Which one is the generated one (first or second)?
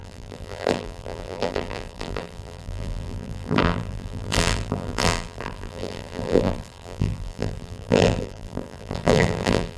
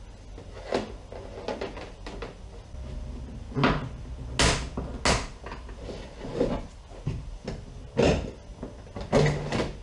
first